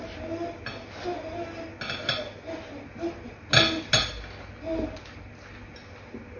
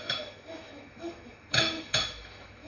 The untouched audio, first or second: first